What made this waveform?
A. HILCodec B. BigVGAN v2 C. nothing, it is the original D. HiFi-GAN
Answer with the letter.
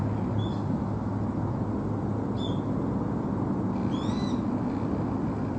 C